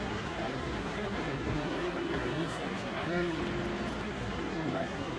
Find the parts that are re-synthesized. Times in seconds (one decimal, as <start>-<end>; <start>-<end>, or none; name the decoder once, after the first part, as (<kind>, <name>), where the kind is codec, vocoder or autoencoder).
0.0-3.4 (codec, SNAC); 4.0-5.2